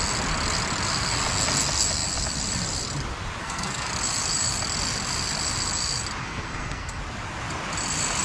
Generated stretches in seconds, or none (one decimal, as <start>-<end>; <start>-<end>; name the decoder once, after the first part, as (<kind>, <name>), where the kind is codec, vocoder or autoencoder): 3.4-3.9 (codec, SNAC); 6.2-7.0